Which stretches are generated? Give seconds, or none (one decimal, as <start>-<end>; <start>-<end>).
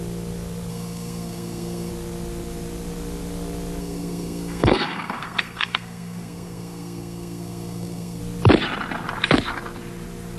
0.7-1.9; 3.8-8.2